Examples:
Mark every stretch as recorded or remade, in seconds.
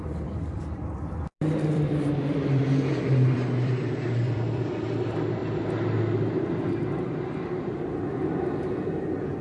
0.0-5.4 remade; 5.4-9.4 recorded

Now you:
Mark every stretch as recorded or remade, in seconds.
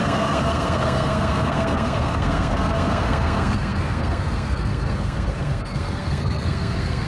0.0-7.1 remade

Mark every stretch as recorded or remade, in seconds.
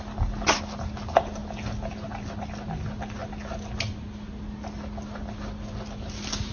0.0-6.5 recorded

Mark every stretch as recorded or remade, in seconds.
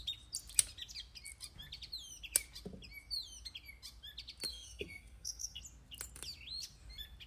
0.0-4.5 recorded; 4.5-5.6 remade; 5.6-7.3 recorded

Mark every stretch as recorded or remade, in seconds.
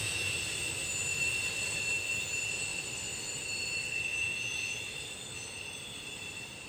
0.0-1.1 recorded; 1.1-1.8 remade; 1.8-2.7 recorded; 2.7-6.3 remade; 6.3-6.7 recorded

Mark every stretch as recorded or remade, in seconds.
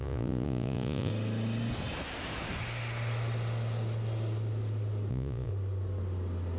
0.0-1.1 remade; 1.1-5.1 recorded; 5.1-5.5 remade; 5.5-6.6 recorded